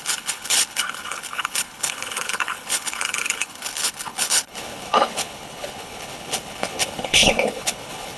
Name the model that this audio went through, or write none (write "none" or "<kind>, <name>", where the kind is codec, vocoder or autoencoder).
codec, HILCodec